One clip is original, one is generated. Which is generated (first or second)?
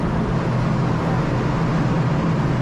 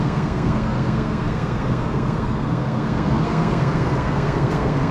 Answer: second